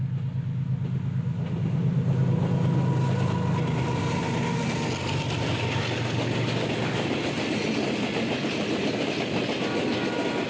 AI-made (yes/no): no